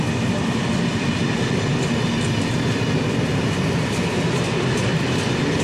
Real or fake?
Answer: real